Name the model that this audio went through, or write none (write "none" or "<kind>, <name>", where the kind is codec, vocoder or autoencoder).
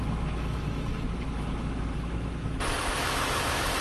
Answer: autoencoder, DAC-VAE